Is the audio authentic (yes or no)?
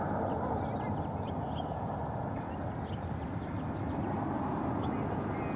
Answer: yes